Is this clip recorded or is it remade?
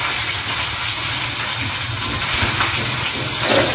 recorded